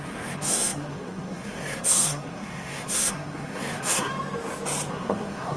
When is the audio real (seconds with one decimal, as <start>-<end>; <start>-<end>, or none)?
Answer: 4.1-4.9